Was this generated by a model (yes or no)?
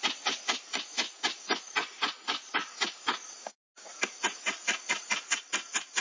no